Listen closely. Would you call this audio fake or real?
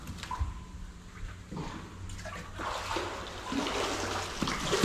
real